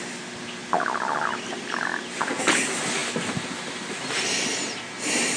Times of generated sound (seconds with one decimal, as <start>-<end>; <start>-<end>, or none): none